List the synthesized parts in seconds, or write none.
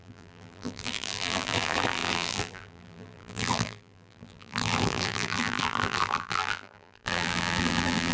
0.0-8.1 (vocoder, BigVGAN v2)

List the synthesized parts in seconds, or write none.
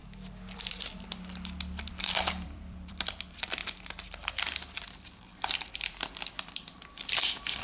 0.0-3.6 (vocoder, BigVGAN v2); 5.7-7.6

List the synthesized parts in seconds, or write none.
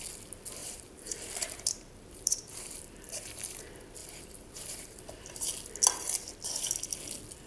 0.6-3.6 (vocoder, BigVGAN v2); 4.0-5.0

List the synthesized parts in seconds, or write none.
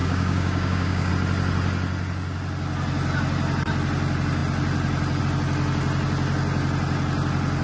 0.0-1.1 (codec, DAC)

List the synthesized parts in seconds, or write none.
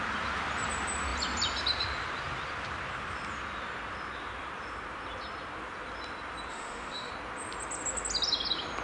6.5-7.1 (autoencoder, DAC-VAE)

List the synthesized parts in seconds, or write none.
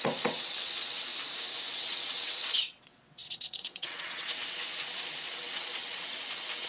0.0-1.1 (vocoder, WaveNeXt); 1.7-6.7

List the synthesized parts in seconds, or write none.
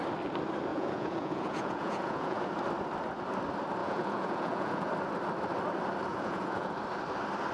0.7-2.5 (vocoder, Vocos); 3.8-4.9; 6.1-6.7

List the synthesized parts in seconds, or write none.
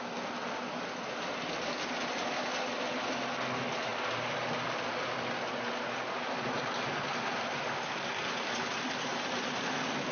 none